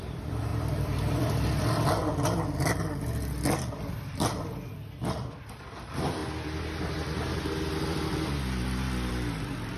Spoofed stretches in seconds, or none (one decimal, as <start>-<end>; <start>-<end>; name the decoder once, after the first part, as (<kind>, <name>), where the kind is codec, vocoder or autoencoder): 0.0-6.2 (vocoder, BigVGAN v2); 9.1-9.8

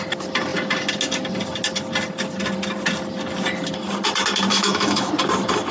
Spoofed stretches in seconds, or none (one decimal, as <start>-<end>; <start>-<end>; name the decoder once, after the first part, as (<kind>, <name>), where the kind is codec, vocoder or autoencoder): 4.5-5.1 (autoencoder, DAC-VAE)